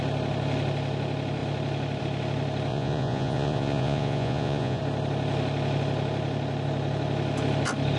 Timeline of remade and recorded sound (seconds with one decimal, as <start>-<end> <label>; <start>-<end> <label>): 0.0-2.7 recorded; 2.7-4.8 remade; 4.8-8.0 recorded